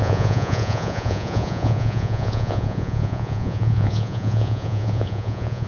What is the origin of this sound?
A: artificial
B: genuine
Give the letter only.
A